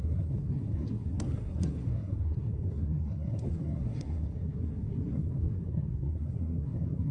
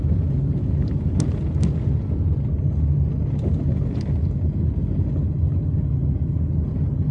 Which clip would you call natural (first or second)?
second